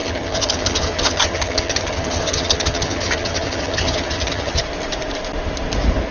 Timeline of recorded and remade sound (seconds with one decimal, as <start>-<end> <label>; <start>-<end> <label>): 0.0-4.6 remade; 4.6-6.1 recorded